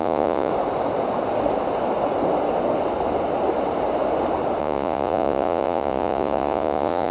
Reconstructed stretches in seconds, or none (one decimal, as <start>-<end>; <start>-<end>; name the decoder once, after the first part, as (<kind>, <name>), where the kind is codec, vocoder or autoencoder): 0.0-0.5 (vocoder, Vocos); 4.6-7.1